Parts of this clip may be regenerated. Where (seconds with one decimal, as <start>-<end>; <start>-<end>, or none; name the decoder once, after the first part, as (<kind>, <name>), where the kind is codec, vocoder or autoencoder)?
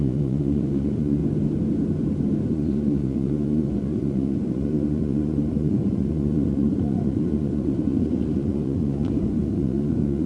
0.0-1.2 (vocoder, Vocos); 2.5-10.3